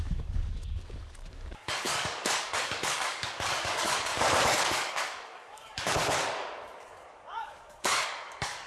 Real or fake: fake